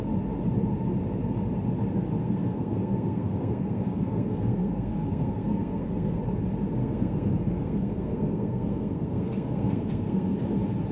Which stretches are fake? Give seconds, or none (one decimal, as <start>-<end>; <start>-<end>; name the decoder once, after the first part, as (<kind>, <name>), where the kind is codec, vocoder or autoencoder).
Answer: 2.2-6.2 (codec, SNAC); 6.8-10.4